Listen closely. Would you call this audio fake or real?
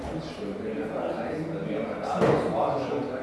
real